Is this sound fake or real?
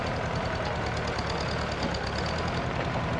real